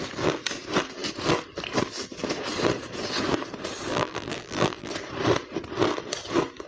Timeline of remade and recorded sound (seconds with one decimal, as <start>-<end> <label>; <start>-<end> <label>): 0.0-3.9 recorded; 3.9-4.9 remade; 4.9-6.7 recorded

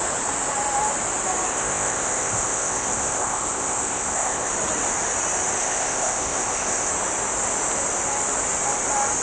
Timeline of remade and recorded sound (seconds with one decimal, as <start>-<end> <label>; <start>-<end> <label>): 0.0-1.5 recorded; 1.5-4.5 remade; 4.5-5.6 recorded; 5.6-6.9 remade; 6.9-9.2 recorded